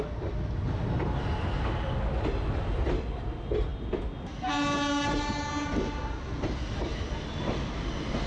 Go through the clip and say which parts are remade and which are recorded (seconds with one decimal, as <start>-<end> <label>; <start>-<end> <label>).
0.0-8.3 recorded